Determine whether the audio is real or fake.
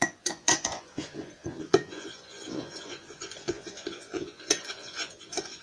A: fake